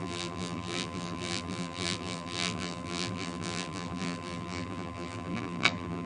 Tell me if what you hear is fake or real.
fake